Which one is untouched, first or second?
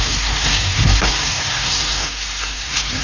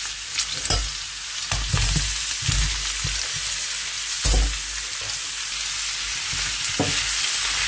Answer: second